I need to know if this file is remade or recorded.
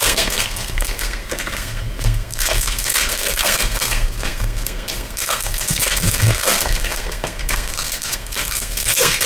remade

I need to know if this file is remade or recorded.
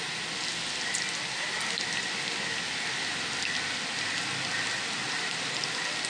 recorded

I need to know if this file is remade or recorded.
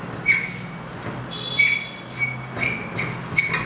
recorded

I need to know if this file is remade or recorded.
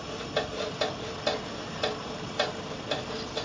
recorded